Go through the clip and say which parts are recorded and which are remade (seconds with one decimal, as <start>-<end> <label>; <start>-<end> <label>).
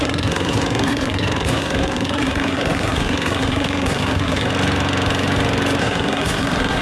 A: 0.0-4.5 remade; 4.5-5.8 recorded; 5.8-6.8 remade